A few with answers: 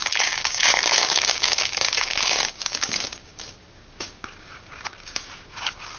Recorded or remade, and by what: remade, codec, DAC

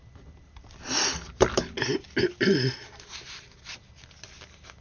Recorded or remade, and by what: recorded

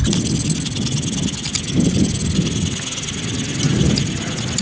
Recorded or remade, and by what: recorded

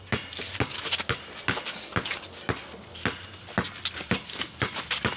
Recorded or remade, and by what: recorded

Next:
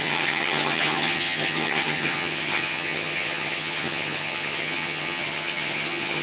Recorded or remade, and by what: remade, vocoder, HiFi-GAN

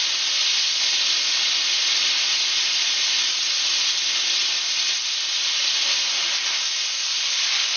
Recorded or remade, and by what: recorded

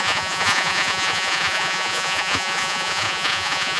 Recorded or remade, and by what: remade, vocoder, Vocos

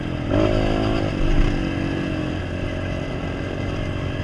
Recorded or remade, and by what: recorded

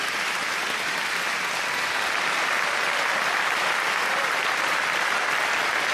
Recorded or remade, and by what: recorded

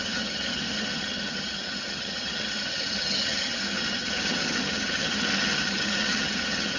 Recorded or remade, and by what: remade, vocoder, HiFi-GAN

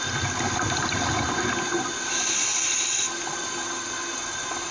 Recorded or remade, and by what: recorded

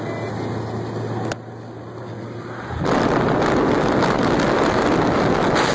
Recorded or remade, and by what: recorded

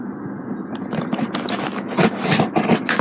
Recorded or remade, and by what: recorded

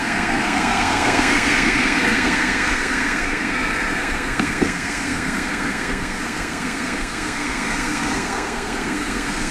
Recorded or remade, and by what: remade, codec, SNAC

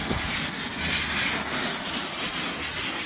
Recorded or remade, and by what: recorded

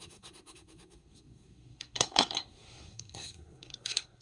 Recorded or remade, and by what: remade, codec, SNAC